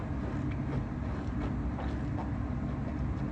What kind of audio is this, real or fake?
real